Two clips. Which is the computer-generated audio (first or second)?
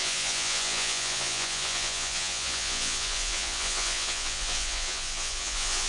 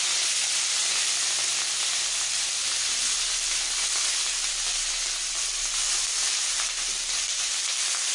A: first